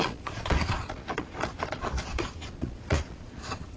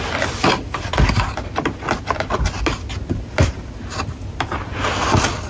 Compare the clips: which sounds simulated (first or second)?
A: first